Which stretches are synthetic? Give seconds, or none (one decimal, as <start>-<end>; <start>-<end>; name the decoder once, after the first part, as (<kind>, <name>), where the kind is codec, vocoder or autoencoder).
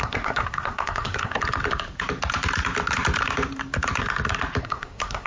0.0-1.4 (codec, SNAC); 4.6-5.3